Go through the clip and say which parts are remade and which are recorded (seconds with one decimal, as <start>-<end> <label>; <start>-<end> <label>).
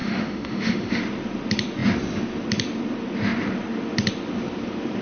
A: 0.0-1.0 remade; 1.0-5.0 recorded